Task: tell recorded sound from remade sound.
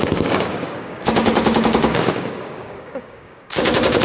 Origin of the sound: remade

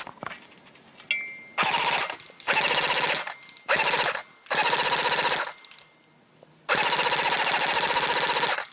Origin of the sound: recorded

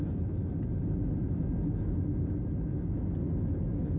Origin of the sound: recorded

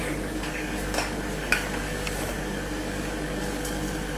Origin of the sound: remade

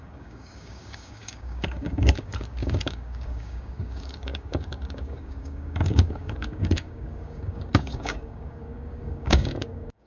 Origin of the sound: remade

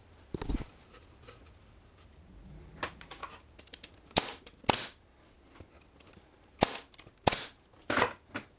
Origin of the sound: recorded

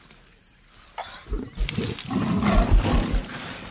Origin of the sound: recorded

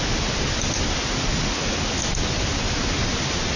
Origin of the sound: recorded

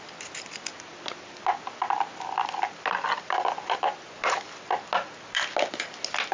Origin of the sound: recorded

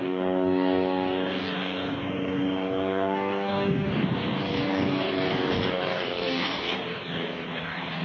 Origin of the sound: remade